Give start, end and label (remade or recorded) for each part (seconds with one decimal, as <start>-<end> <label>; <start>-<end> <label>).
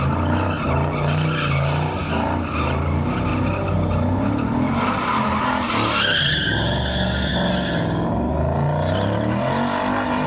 0.0-10.3 recorded